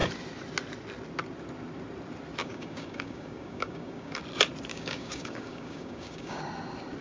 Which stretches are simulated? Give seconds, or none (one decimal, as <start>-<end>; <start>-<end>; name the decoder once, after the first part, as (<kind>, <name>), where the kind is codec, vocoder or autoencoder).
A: 2.4-4.2 (codec, DAC); 4.7-6.4